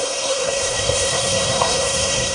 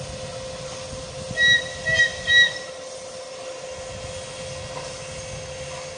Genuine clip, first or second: second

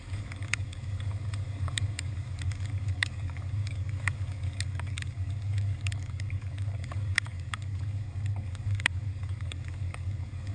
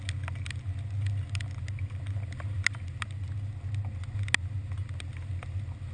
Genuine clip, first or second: second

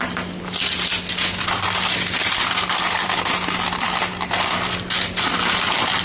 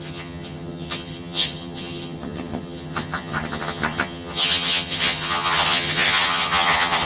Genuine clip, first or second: first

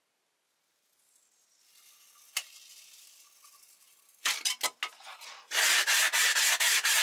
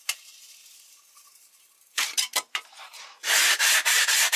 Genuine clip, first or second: first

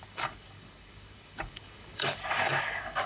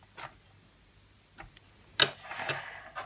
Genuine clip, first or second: second